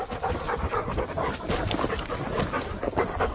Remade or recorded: recorded